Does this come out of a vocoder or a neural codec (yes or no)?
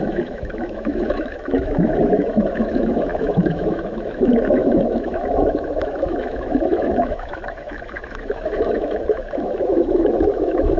yes